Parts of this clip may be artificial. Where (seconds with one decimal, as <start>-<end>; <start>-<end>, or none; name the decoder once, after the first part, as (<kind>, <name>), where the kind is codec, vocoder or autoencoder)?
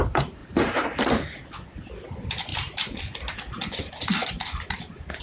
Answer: 0.4-1.0 (vocoder, BigVGAN v2)